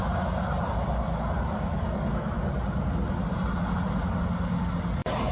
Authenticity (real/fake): real